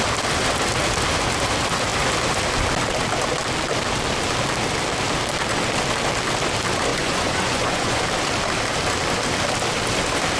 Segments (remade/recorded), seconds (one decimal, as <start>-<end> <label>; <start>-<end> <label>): 0.0-6.9 recorded; 6.9-8.0 remade; 8.0-10.4 recorded